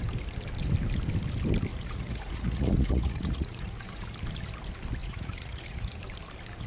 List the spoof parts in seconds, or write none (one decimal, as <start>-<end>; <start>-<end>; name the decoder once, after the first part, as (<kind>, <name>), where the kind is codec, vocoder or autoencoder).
1.7-4.1 (vocoder, Vocos); 5.0-5.9